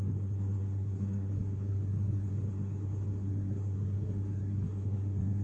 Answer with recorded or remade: remade